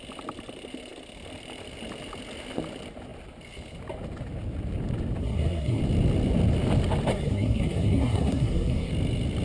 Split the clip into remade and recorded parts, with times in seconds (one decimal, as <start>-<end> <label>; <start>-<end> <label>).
0.0-5.2 recorded; 5.2-5.8 remade; 5.8-7.1 recorded; 7.1-8.9 remade; 8.9-9.4 recorded